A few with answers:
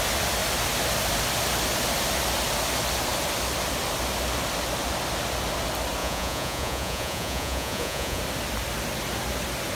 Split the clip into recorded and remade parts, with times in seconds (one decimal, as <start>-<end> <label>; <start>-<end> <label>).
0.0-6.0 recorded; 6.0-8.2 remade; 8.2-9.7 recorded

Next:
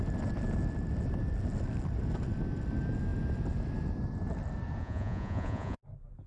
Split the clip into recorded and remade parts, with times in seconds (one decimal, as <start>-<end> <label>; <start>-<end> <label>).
0.0-4.8 recorded; 4.8-5.8 remade; 5.8-6.3 recorded

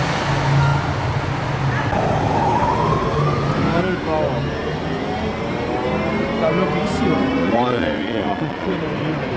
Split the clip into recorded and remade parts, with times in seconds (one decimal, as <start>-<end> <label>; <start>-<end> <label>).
0.0-7.4 recorded; 7.4-8.7 remade; 8.7-9.4 recorded

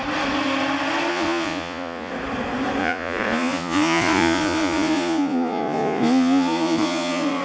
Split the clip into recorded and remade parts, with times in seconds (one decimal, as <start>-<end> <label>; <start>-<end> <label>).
0.0-1.1 recorded; 1.1-2.1 remade; 2.1-2.8 recorded; 2.8-7.4 remade